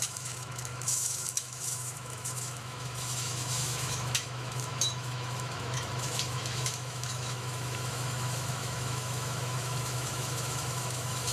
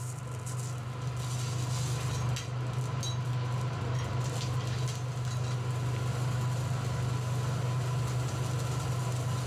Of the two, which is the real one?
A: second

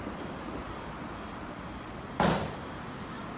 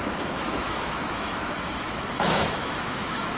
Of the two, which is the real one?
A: first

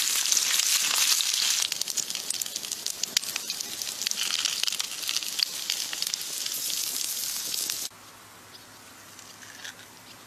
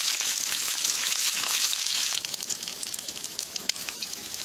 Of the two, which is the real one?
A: first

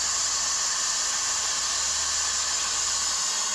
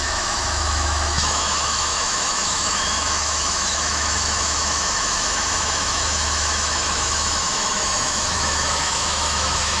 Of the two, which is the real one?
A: first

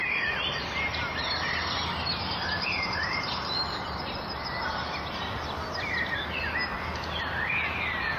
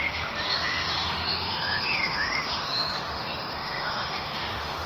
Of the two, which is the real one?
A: first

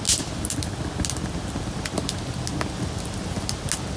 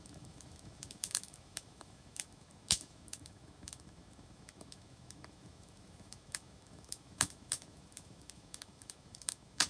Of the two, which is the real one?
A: first